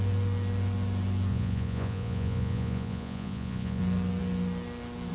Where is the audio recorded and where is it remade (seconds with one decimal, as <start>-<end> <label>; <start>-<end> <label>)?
0.0-1.3 recorded; 1.3-3.8 remade; 3.8-5.1 recorded